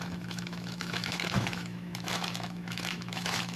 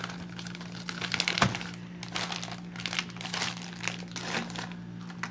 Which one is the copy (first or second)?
first